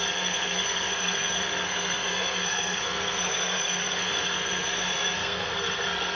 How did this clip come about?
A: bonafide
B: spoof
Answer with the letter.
B